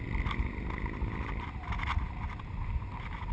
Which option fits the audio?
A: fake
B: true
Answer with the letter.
B